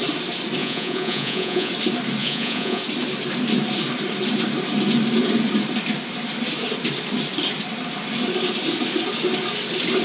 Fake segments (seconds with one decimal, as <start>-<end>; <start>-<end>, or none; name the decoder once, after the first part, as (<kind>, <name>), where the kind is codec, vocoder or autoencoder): 0.6-1.7 (vocoder, Vocos); 2.2-2.8

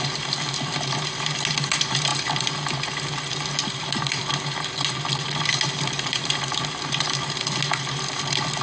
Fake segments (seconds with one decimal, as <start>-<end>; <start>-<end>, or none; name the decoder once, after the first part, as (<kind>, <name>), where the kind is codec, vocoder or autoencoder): none

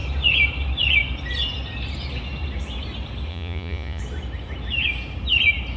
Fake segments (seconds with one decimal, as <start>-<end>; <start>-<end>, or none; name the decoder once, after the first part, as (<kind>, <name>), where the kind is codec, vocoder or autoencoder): 3.3-4.0 (vocoder, Vocos)

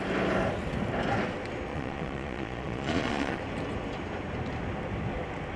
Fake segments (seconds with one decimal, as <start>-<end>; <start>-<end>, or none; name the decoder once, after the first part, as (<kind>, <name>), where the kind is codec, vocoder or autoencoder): 1.7-3.4 (vocoder, Vocos)

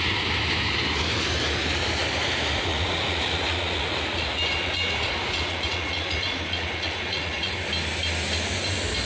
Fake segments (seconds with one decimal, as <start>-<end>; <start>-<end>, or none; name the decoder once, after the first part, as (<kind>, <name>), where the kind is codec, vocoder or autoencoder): 2.7-7.5 (vocoder, Vocos)

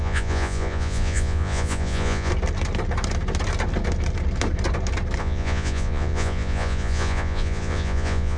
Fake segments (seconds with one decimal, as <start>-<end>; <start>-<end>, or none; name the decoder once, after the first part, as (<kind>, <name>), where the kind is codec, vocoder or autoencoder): 0.0-2.3 (vocoder, Vocos); 5.2-8.4